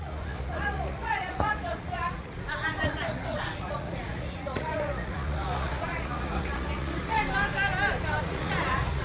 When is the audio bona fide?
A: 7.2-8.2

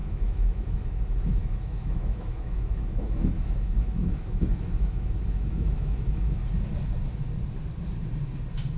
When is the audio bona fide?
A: 1.0-1.4; 6.4-8.8

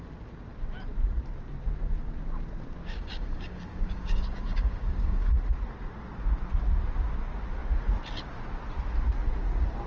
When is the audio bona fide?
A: 0.0-2.8; 5.3-9.9

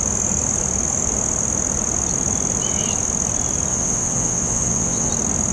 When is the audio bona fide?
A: 0.0-3.7; 5.1-5.5